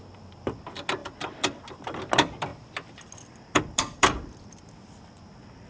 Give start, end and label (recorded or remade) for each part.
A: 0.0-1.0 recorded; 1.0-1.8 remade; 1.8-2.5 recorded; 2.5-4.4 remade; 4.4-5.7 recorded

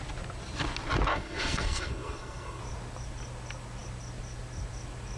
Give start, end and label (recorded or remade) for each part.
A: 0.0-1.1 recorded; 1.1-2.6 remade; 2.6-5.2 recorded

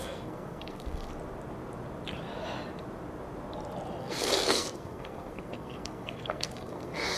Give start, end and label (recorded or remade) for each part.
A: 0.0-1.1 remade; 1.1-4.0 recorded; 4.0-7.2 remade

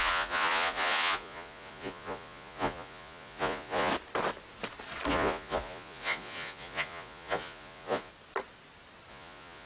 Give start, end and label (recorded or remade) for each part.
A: 0.0-3.9 remade; 3.9-5.1 recorded; 5.1-8.1 remade; 8.1-9.1 recorded; 9.1-9.7 remade

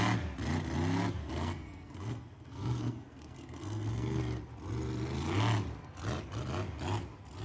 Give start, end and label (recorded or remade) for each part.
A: 0.0-1.2 recorded; 1.2-4.4 remade; 4.4-7.4 recorded